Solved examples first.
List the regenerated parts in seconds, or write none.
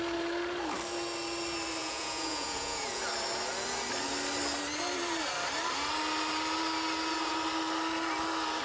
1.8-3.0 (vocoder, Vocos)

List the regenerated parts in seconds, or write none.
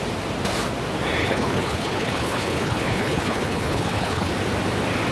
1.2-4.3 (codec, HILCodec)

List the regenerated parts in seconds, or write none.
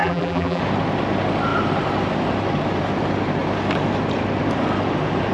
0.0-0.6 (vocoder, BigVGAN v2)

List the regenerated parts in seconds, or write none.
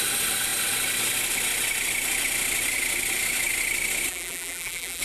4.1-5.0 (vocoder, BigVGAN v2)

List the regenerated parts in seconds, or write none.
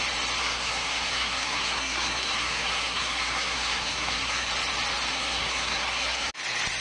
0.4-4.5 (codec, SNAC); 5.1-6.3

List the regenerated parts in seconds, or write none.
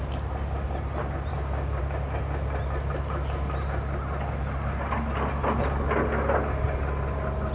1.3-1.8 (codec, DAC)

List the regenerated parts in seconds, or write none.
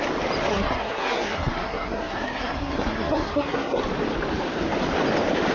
0.5-3.8 (codec, SNAC)